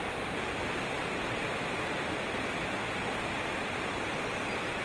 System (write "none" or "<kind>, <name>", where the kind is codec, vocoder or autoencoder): none